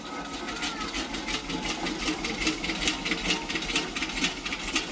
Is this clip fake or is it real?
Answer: real